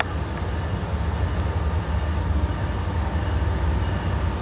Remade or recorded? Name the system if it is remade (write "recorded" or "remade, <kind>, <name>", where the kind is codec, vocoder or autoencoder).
recorded